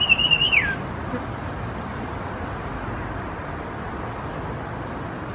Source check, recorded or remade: recorded